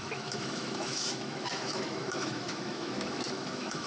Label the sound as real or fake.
fake